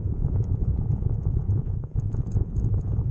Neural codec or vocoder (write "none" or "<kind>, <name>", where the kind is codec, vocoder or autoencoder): vocoder, Vocos